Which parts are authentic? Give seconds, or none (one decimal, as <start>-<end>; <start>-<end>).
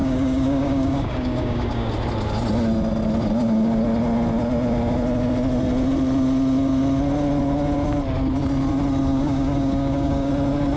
1.9-9.1; 10.3-10.8